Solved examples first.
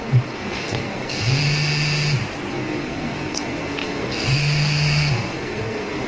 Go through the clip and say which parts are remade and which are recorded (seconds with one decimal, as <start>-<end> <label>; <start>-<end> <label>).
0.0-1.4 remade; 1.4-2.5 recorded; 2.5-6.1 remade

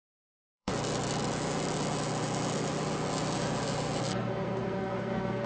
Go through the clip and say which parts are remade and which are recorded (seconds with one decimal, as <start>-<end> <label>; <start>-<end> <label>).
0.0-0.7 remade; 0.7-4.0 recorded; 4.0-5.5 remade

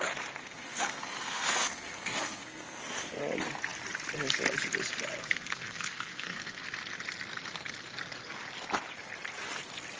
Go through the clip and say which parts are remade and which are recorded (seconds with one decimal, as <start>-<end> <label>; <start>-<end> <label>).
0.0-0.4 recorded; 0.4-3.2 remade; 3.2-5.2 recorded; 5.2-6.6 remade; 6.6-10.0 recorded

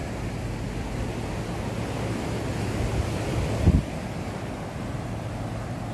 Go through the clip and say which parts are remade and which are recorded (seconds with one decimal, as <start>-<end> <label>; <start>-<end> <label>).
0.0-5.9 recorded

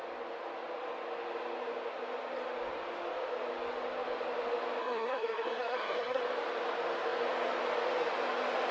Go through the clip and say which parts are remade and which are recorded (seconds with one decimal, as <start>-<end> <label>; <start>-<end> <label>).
0.0-4.8 recorded; 4.8-6.2 remade; 6.2-8.7 recorded

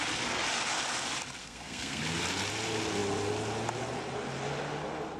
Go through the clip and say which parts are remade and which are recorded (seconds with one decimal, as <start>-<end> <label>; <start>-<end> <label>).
0.0-1.4 recorded; 1.4-2.0 remade; 2.0-5.2 recorded